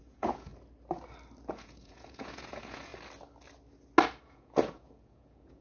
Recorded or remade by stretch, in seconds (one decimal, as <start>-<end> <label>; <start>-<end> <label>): 0.0-0.5 remade; 0.5-1.5 recorded; 1.5-2.9 remade; 2.9-4.2 recorded; 4.2-5.6 remade